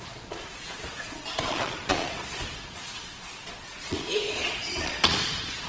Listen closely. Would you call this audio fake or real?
fake